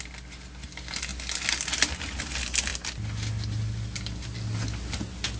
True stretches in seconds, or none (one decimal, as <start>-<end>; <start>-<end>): 0.0-5.4